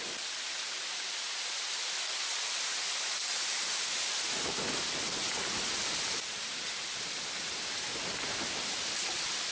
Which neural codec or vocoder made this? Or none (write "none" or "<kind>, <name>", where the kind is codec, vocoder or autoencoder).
none